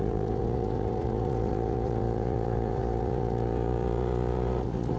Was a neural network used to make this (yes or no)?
yes